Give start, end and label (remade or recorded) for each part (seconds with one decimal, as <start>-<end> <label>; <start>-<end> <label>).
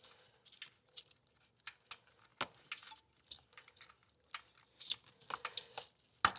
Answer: 0.0-6.4 recorded